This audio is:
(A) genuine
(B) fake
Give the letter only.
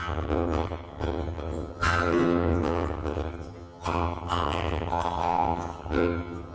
B